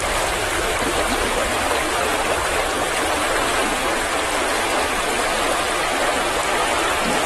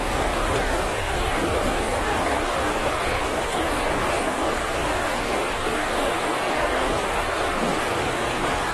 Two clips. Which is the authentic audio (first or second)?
first